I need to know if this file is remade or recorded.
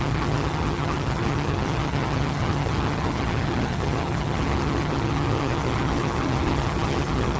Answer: remade